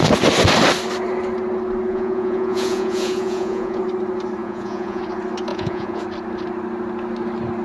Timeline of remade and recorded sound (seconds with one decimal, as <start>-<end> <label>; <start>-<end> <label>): 0.0-1.9 recorded; 1.9-3.8 remade; 3.8-4.4 recorded; 4.4-5.0 remade; 5.0-5.5 recorded; 5.5-6.0 remade; 6.0-7.6 recorded